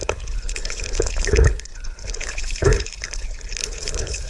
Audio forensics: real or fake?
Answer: fake